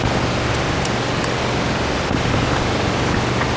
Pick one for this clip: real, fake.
real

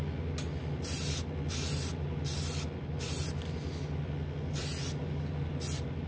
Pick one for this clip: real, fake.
real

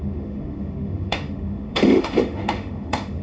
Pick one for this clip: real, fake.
fake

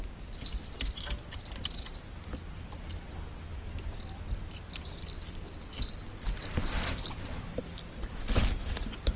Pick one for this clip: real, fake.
real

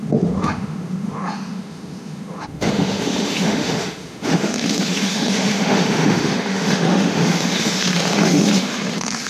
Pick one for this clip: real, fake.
fake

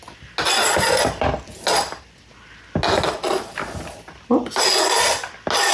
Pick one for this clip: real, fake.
real